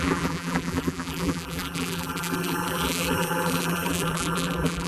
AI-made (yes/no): yes